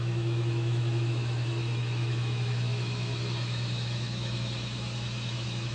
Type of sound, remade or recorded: remade